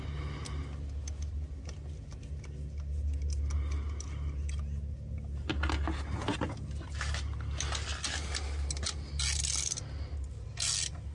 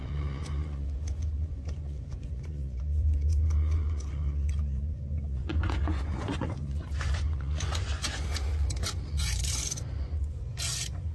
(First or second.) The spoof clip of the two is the second